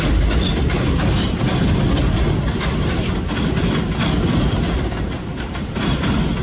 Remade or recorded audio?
recorded